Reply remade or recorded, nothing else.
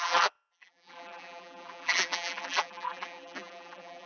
remade